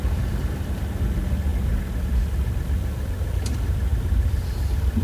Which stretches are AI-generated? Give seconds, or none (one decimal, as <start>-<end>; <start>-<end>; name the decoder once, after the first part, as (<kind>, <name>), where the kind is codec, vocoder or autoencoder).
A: 0.0-0.8 (vocoder, BigVGAN v2)